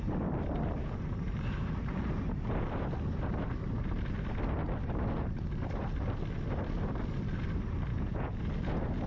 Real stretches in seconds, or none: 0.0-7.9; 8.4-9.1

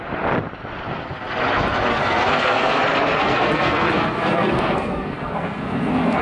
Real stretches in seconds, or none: 0.0-1.9; 2.8-3.2

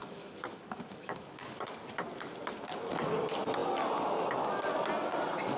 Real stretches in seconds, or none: 1.9-5.6

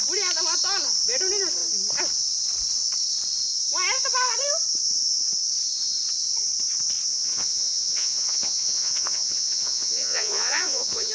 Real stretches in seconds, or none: 0.0-7.1